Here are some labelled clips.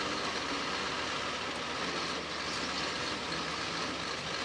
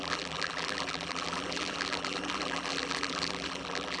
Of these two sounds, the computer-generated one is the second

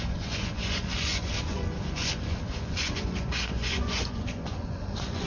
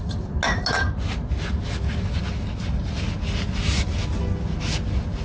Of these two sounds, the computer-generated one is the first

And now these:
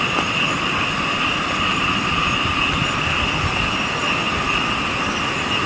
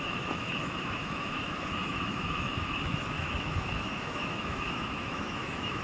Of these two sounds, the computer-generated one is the second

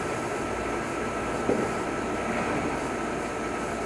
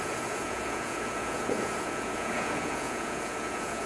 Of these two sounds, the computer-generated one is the second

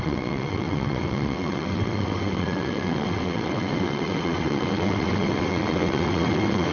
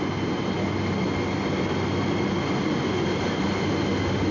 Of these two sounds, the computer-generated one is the first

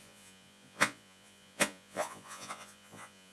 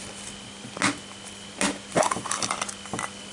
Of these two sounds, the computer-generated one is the first